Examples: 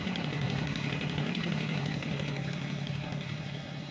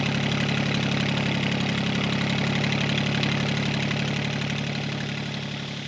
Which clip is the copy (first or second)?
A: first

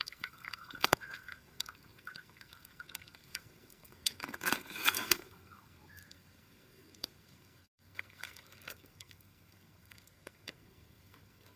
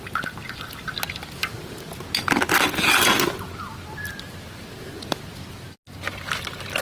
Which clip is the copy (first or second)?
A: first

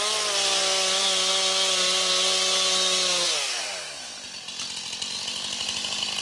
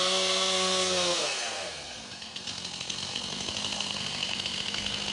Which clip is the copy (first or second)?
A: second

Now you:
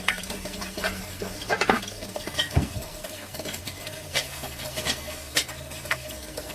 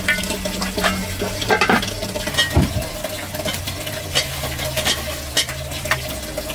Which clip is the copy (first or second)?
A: first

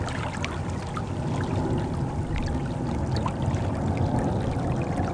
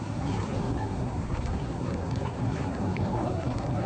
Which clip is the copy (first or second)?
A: second